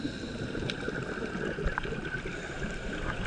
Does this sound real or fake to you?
real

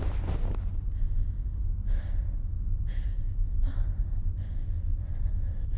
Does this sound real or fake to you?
real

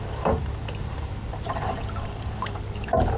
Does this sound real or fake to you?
fake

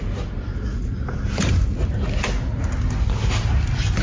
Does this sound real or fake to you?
real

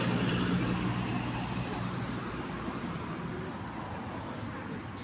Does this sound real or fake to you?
real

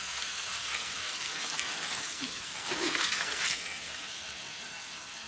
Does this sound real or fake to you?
fake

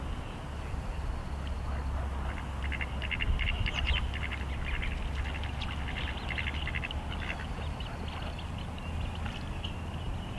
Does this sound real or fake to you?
real